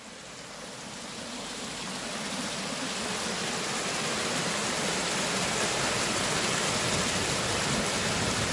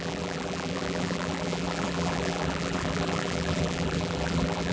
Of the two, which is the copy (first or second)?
second